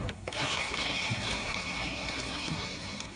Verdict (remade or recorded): remade